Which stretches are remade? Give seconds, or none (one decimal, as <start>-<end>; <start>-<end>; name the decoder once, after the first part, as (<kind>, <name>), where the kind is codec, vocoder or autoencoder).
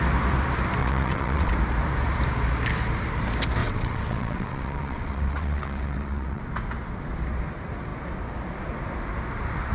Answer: 0.8-1.5 (vocoder, WaveNeXt); 3.6-6.4